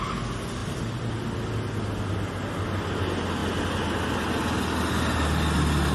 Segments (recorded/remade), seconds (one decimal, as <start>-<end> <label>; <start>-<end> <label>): 0.0-5.9 recorded